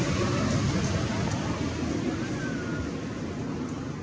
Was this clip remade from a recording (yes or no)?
no